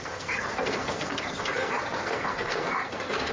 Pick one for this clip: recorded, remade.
remade